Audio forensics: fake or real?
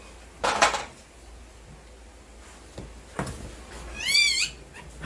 real